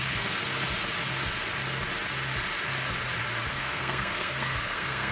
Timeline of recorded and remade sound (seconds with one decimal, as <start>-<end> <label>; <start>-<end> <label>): 0.0-0.4 remade; 0.4-3.5 recorded; 3.5-5.1 remade